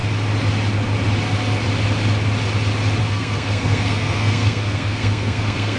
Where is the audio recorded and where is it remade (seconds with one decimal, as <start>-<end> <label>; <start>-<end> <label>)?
0.0-3.0 recorded; 3.0-5.8 remade